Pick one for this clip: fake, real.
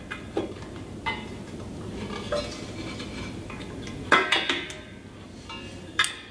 real